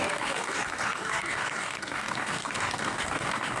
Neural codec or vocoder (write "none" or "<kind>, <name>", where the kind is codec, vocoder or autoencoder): codec, DAC